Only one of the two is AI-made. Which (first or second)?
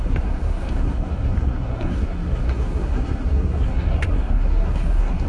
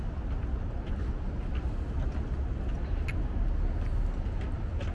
first